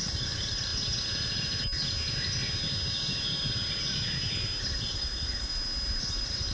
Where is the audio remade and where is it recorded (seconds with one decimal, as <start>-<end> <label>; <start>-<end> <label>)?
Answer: 0.0-0.7 remade; 0.7-4.6 recorded; 4.6-5.5 remade; 5.5-6.0 recorded; 6.0-6.5 remade